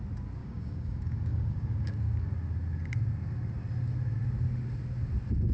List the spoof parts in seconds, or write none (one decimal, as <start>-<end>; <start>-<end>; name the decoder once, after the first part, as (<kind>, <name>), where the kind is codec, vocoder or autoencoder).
0.4-2.3 (codec, DAC)